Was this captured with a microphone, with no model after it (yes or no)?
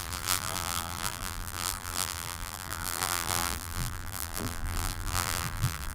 no